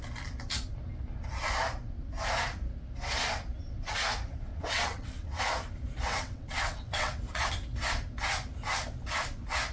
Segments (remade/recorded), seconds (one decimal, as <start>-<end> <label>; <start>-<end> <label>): 0.0-4.5 recorded; 4.5-5.4 remade; 5.4-6.1 recorded; 6.1-7.2 remade; 7.2-9.7 recorded